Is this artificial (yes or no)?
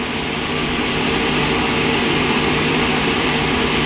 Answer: yes